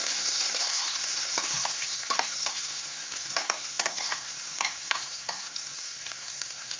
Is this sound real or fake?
fake